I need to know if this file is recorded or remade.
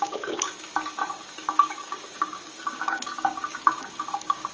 remade